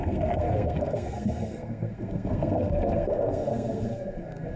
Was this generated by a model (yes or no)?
yes